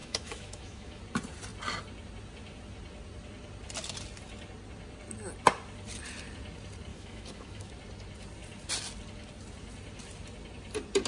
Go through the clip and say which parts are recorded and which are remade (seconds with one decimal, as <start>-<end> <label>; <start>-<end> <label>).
0.0-1.0 remade; 1.0-6.9 recorded; 6.9-7.7 remade; 7.7-11.1 recorded